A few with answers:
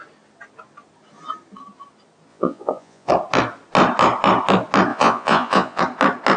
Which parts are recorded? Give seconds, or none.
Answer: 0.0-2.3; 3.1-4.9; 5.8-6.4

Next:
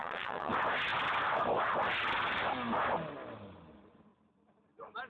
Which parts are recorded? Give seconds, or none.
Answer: 0.5-5.1